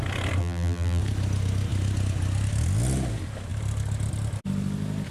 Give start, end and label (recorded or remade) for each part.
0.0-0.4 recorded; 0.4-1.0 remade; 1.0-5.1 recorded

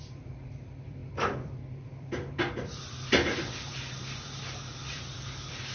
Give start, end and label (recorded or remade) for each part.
0.0-5.7 remade

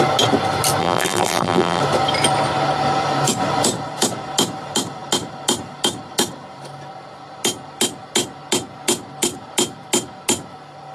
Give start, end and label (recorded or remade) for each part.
0.0-0.8 recorded; 0.8-1.8 remade; 1.8-10.9 recorded

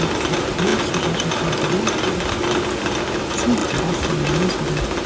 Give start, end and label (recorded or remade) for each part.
0.0-3.6 recorded; 3.6-4.5 remade; 4.5-5.1 recorded

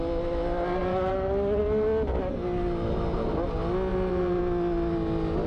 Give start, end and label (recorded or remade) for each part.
0.0-3.9 recorded; 3.9-4.4 remade; 4.4-5.5 recorded

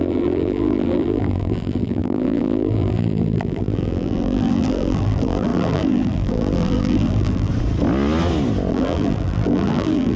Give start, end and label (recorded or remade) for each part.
0.0-7.5 remade; 7.5-8.7 recorded; 8.7-10.2 remade

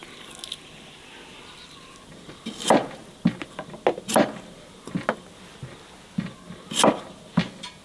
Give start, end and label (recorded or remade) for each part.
0.0-7.8 recorded